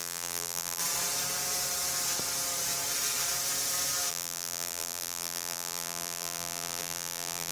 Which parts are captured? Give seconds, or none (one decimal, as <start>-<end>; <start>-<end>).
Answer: 0.8-4.1